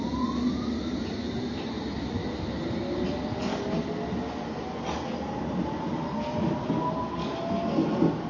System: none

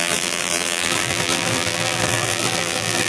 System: vocoder, BigVGAN v2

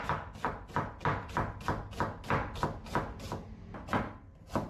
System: none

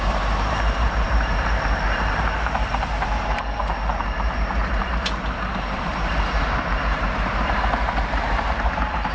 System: vocoder, BigVGAN v2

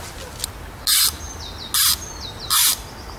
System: none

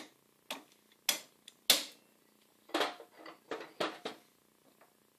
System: none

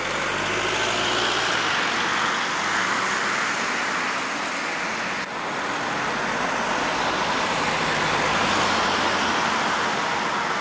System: none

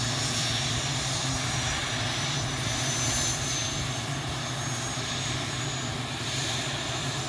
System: none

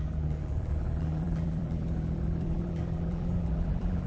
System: vocoder, BigVGAN v2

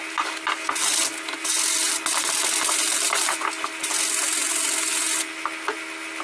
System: none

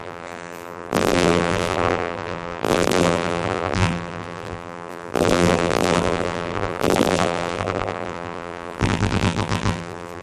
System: vocoder, BigVGAN v2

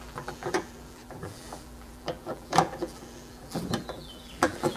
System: vocoder, BigVGAN v2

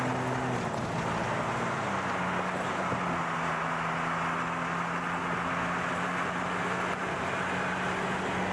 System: none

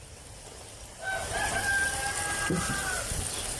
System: none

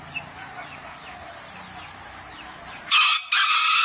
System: none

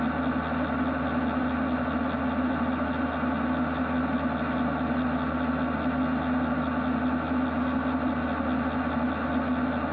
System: none